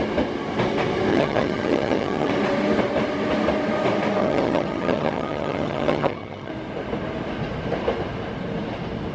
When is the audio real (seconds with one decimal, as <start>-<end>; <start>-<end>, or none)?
0.0-1.1; 2.3-4.2; 6.5-9.1